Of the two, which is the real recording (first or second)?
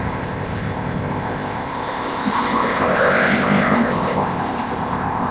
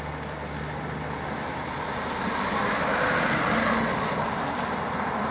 second